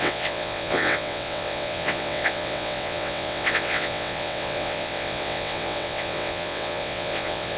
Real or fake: fake